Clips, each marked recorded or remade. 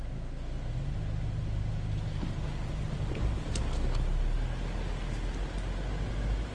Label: recorded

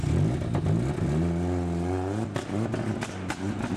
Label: recorded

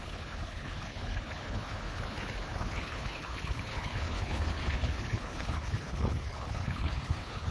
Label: remade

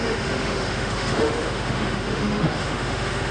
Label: remade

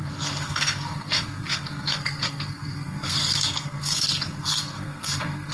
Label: remade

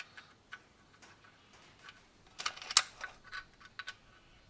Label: recorded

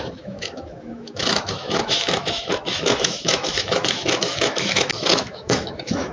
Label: remade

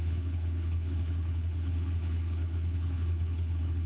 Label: remade